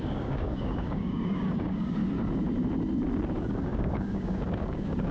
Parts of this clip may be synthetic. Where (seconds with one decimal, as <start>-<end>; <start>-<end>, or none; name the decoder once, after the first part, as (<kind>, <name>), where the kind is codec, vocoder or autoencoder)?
0.0-2.0 (codec, DAC); 3.4-5.1